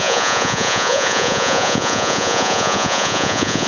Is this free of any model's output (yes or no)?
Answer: no